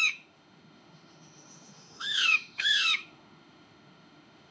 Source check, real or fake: fake